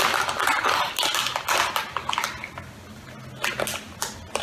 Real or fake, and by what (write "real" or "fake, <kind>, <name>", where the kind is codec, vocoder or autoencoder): real